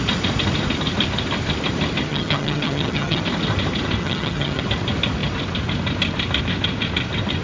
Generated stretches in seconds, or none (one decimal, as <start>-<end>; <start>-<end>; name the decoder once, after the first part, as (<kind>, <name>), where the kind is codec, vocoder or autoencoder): 2.1-3.2 (vocoder, HiFi-GAN); 4.0-4.6